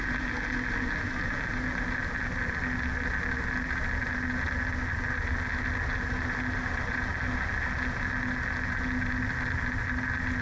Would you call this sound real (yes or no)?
yes